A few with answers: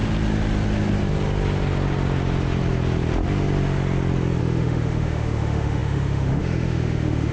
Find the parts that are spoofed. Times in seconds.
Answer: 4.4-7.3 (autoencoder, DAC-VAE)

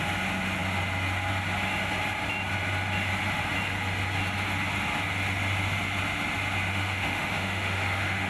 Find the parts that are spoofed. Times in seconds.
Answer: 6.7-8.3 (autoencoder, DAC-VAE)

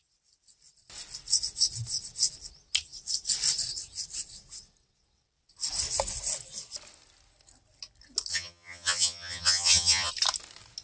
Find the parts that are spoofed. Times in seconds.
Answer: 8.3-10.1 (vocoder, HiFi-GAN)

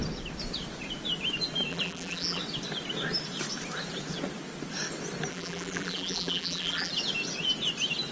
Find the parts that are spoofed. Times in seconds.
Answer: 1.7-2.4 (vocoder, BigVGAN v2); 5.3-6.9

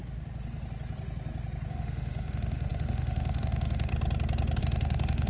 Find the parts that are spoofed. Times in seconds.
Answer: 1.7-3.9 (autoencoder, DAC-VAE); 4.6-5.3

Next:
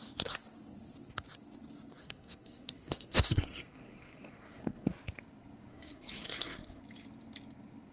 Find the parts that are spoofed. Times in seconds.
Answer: 2.0-4.9 (codec, SNAC); 5.7-6.8

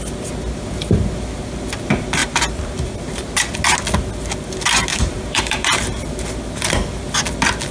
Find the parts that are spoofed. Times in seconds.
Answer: 2.2-3.3 (vocoder, BigVGAN v2); 4.9-6.0